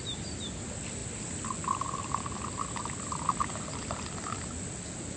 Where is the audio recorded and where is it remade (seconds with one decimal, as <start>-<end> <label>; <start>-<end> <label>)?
0.0-5.2 recorded